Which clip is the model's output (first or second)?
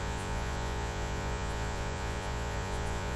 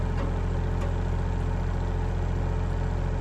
first